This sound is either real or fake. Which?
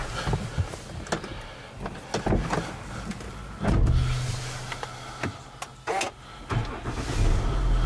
real